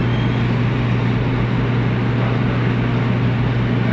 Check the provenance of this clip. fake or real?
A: real